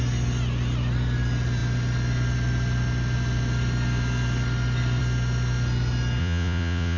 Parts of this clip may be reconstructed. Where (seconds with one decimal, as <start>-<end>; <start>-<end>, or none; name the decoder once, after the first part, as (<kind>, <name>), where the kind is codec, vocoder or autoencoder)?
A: 6.2-7.0 (vocoder, Vocos)